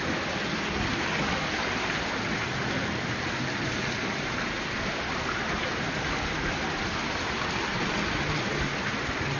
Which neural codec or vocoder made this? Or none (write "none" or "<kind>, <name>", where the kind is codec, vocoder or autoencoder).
none